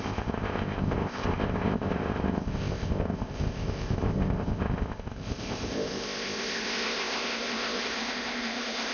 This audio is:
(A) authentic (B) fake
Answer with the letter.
B